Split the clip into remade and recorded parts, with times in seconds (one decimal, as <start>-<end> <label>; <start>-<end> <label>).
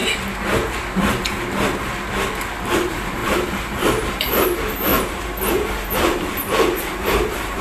0.0-2.7 recorded; 2.7-4.9 remade; 4.9-5.5 recorded; 5.5-7.6 remade